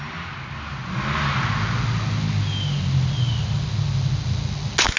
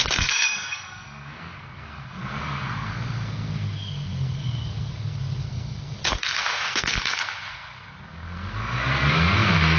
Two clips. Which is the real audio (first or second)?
first